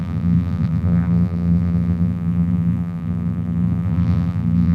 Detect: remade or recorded remade